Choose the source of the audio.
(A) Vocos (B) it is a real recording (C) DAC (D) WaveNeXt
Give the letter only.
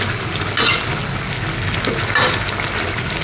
B